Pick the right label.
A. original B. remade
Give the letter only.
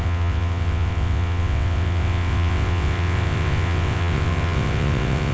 B